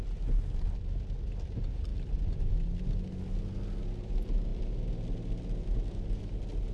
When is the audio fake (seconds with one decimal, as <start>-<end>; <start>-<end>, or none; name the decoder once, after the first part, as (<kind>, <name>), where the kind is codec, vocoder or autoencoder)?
none

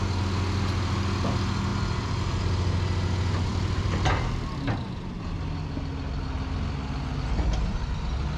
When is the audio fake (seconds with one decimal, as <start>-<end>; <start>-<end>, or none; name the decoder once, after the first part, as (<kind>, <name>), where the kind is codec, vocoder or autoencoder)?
1.7-2.4 (vocoder, BigVGAN v2); 3.5-4.1